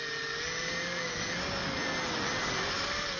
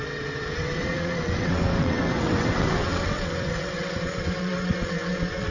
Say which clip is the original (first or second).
first